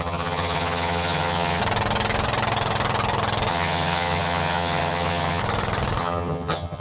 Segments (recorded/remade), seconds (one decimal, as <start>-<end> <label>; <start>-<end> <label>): 0.0-1.6 remade; 1.6-3.5 recorded; 3.5-5.4 remade; 5.4-6.0 recorded; 6.0-6.8 remade